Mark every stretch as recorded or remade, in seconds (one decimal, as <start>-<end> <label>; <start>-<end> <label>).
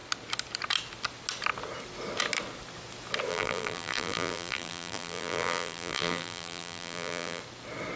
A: 0.0-3.3 recorded; 3.3-7.4 remade; 7.4-8.0 recorded